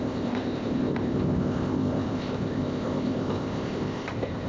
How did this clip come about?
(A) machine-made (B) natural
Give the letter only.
A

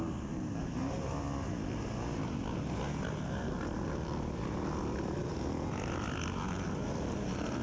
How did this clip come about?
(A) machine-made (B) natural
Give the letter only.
B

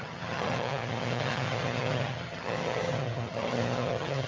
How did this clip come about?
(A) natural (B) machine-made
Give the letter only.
B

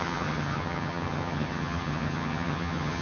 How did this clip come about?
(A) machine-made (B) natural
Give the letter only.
A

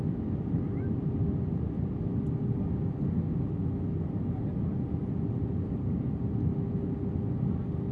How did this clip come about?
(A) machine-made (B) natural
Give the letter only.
B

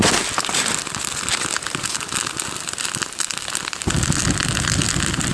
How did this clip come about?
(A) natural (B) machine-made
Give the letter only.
A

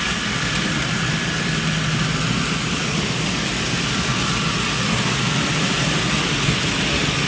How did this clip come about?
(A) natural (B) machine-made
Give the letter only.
A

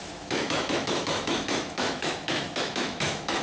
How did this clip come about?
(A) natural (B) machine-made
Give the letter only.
B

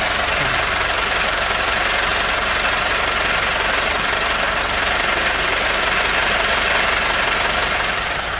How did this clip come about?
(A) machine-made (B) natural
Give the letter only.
B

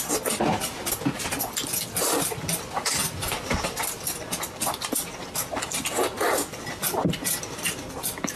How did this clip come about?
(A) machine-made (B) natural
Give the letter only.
B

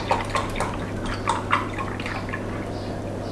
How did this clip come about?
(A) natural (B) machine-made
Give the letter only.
A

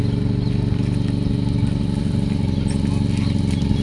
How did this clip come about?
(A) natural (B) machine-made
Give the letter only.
A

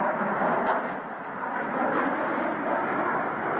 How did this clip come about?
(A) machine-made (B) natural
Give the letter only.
B